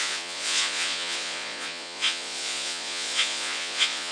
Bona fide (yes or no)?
no